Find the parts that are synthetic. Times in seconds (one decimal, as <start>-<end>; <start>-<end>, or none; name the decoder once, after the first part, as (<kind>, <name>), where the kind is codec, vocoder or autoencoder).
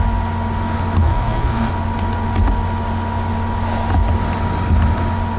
1.0-1.7 (codec, SNAC)